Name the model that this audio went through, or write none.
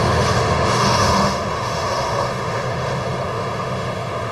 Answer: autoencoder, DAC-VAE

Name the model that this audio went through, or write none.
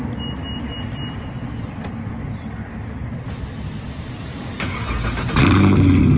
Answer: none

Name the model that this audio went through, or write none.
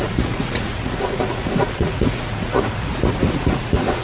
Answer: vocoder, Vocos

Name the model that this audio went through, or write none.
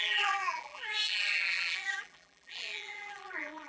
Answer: vocoder, BigVGAN v2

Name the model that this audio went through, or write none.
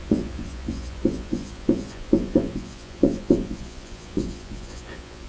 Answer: vocoder, Vocos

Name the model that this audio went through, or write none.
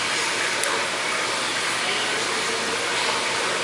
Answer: vocoder, BigVGAN v2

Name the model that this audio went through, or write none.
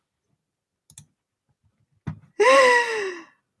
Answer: none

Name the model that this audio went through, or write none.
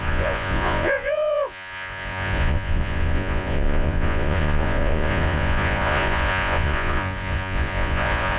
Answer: vocoder, Vocos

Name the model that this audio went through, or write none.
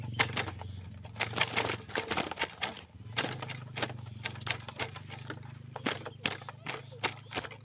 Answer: none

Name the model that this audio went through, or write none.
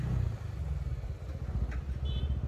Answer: none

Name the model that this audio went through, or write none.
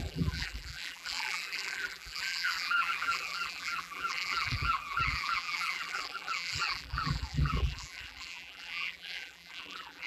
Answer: vocoder, BigVGAN v2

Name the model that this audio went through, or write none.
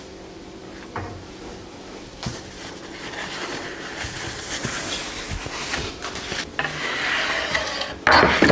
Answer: none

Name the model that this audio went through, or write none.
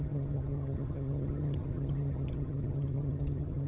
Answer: vocoder, HiFi-GAN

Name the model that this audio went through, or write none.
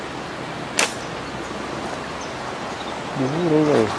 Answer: none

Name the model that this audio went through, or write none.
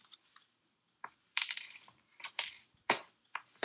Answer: vocoder, BigVGAN v2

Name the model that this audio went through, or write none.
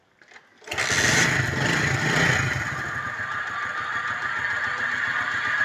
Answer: none